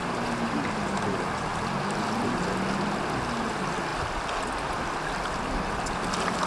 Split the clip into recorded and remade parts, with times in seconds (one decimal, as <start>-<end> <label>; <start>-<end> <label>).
0.0-6.5 recorded